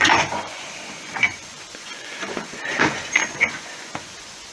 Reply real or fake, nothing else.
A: fake